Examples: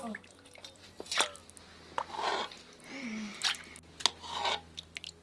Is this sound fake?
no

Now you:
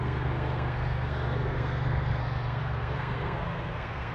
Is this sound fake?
yes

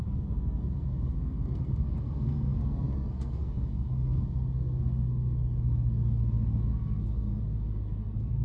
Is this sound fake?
yes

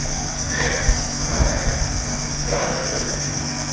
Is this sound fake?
yes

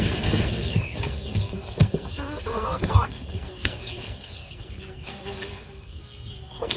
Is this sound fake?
yes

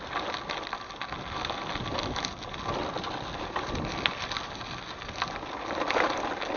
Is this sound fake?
no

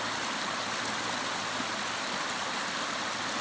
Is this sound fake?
no